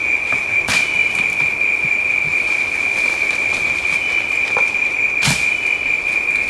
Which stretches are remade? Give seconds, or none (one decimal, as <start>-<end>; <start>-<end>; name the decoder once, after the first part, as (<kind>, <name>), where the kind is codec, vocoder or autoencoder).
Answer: none